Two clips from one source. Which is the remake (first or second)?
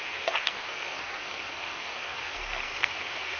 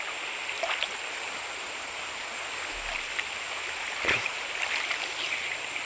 first